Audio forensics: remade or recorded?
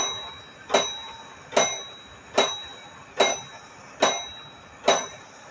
recorded